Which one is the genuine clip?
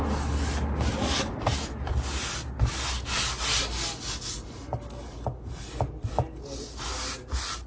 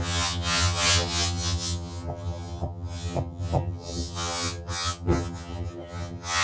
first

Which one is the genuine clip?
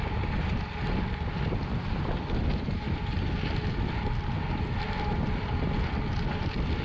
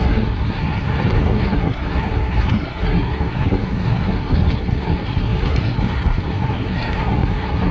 first